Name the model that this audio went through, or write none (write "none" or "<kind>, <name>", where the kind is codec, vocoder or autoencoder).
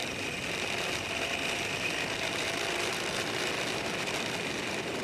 vocoder, BigVGAN v2